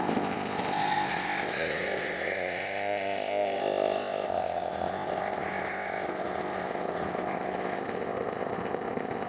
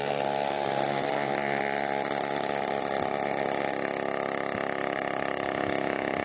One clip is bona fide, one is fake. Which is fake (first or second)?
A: first